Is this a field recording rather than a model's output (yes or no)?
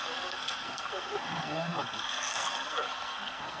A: no